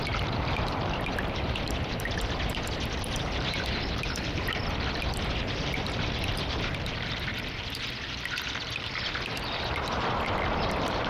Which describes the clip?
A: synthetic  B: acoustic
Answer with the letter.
A